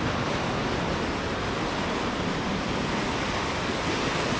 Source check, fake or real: real